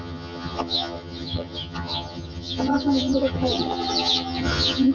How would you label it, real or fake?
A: fake